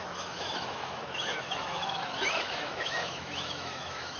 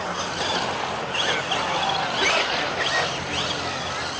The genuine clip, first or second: second